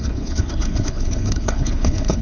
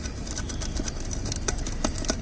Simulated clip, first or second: first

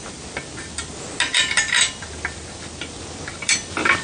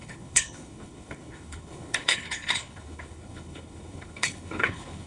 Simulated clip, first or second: second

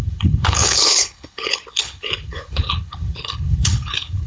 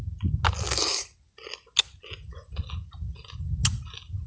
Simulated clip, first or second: first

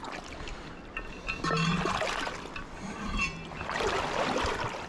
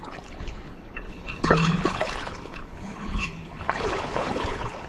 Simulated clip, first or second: second